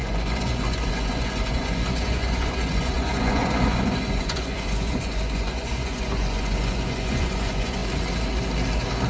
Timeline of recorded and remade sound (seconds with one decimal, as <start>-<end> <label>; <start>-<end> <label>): 0.0-7.8 remade; 7.8-9.1 recorded